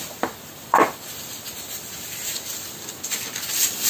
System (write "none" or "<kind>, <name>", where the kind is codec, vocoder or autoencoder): none